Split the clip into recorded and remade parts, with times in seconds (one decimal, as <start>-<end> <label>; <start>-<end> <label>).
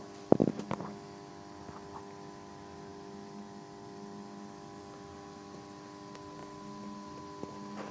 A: 0.0-2.9 recorded; 2.9-4.8 remade; 4.8-7.9 recorded